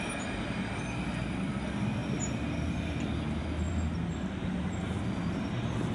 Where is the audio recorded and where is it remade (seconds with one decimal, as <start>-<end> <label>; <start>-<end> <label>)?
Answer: 0.0-5.9 recorded